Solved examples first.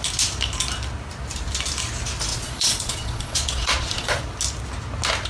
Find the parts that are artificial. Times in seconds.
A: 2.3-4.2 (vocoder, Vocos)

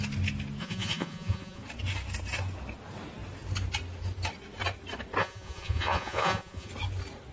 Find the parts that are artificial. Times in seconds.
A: 0.6-1.6 (vocoder, Vocos); 5.2-6.7

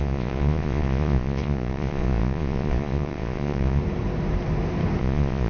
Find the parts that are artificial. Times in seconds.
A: 0.0-3.8 (vocoder, Vocos); 5.0-5.5